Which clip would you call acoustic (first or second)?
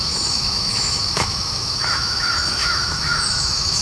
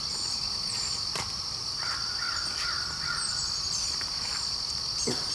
second